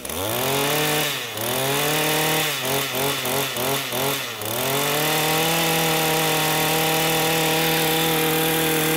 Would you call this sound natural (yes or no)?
yes